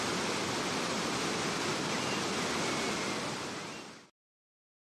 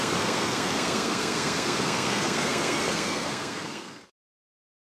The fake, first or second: second